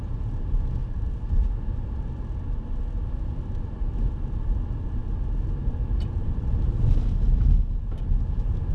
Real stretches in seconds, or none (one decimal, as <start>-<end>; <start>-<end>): 0.0-0.8; 1.6-6.2; 7.0-8.7